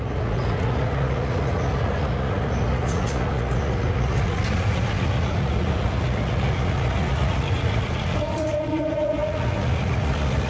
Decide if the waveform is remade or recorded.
remade